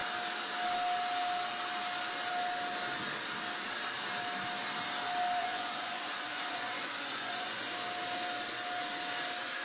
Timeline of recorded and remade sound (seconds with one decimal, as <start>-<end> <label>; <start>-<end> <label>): 0.0-5.4 recorded; 5.4-7.7 remade; 7.7-9.6 recorded